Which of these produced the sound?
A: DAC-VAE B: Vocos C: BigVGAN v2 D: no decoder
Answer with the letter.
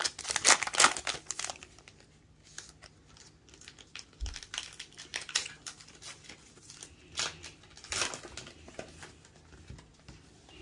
D